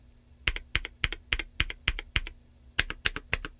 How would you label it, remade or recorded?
recorded